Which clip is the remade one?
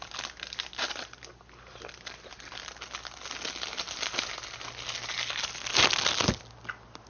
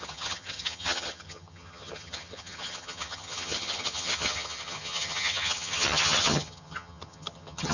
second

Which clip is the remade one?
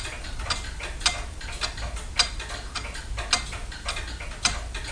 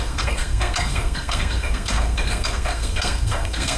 second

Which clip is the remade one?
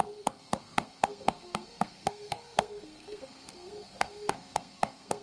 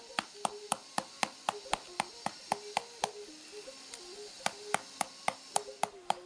first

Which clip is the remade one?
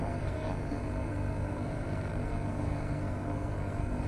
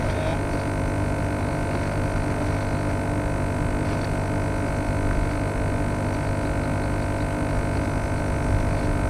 first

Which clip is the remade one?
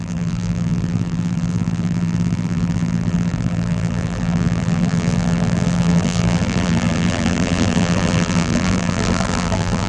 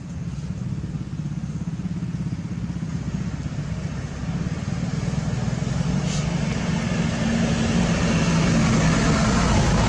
first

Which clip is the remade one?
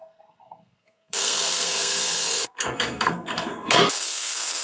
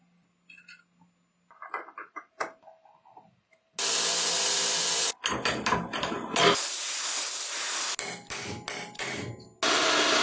first